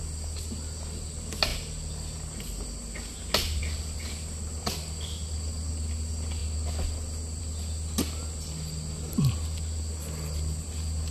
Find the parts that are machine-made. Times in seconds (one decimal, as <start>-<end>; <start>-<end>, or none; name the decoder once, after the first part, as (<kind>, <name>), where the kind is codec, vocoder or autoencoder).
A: none